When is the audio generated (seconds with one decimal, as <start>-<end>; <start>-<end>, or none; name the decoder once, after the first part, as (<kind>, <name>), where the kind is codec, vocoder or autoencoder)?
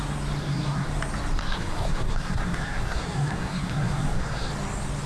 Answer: 0.4-0.9 (codec, SNAC); 1.4-4.5